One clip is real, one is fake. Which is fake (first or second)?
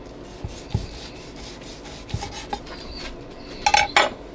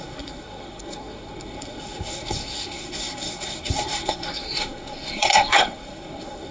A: second